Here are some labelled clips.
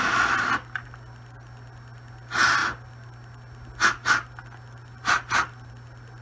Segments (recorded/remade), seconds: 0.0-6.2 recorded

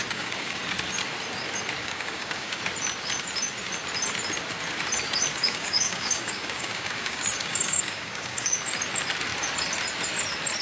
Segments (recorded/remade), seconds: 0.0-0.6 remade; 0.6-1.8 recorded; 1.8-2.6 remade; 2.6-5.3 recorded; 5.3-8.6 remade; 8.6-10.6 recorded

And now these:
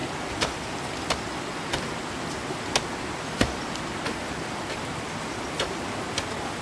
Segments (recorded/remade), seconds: 0.0-6.6 recorded

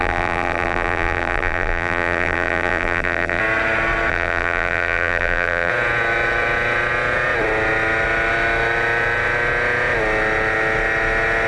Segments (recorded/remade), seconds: 0.0-3.4 remade; 3.4-4.1 recorded; 4.1-5.7 remade; 5.7-11.5 recorded

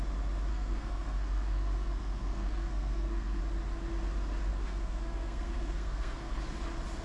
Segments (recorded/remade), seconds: 0.0-0.5 recorded; 0.5-3.4 remade; 3.4-4.5 recorded; 4.5-6.4 remade; 6.4-7.0 recorded